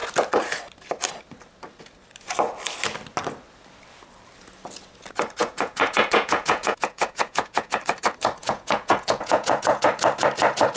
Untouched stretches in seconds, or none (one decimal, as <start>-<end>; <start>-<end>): 0.0-5.4; 7.7-8.4; 9.9-10.8